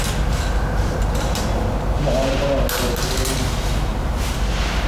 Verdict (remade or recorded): recorded